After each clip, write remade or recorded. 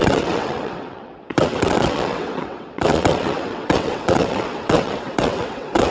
remade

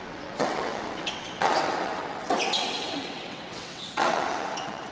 remade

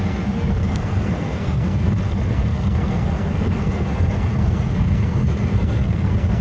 remade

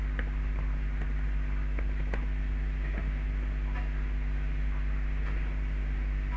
recorded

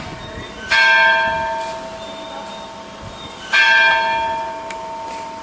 recorded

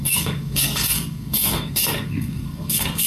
remade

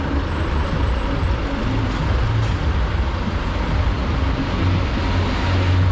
recorded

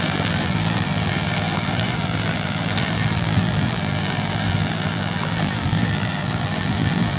remade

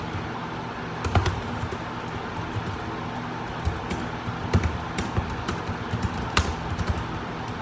recorded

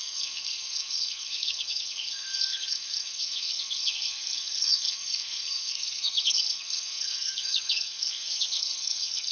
remade